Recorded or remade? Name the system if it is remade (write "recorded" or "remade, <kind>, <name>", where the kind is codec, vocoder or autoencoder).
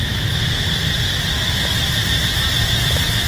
recorded